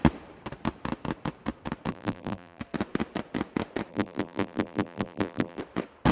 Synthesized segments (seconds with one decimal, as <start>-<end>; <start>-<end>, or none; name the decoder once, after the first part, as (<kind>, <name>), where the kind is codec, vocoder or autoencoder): 1.9-2.6 (vocoder, BigVGAN v2); 3.9-5.6